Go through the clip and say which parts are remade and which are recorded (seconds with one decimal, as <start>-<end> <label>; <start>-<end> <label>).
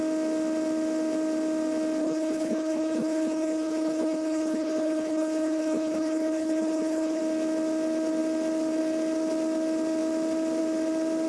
0.0-2.0 recorded; 2.0-7.2 remade; 7.2-11.3 recorded